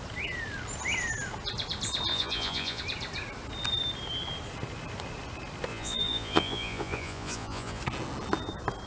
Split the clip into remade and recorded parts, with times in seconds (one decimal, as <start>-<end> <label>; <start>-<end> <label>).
0.0-2.1 recorded; 2.1-2.8 remade; 2.8-5.7 recorded; 5.7-7.8 remade; 7.8-8.9 recorded